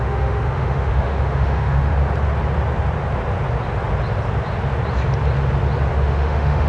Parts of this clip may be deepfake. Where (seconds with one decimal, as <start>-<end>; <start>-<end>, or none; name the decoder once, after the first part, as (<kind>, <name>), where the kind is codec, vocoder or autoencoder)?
0.0-1.9 (autoencoder, DAC-VAE); 5.9-6.7